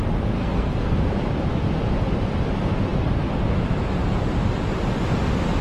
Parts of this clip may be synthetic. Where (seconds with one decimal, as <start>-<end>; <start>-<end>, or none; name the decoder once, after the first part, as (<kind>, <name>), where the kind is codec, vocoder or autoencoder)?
0.4-1.0 (codec, SNAC)